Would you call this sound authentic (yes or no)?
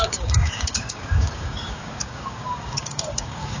no